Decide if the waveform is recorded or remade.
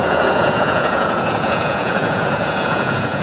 remade